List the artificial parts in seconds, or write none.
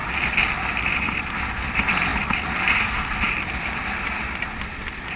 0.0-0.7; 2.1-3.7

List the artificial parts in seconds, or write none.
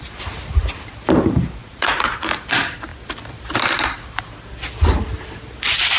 1.6-2.2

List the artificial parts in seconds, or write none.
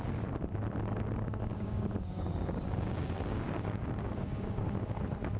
1.5-4.7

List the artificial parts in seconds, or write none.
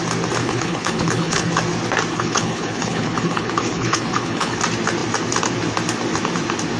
0.4-1.5; 2.1-4.6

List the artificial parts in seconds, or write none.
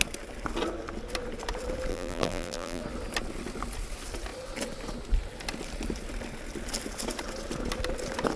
1.9-2.8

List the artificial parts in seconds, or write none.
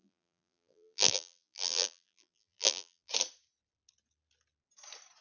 0.0-3.1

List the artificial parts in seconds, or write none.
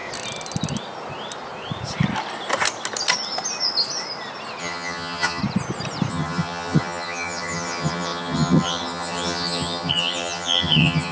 4.6-5.4; 6.1-11.1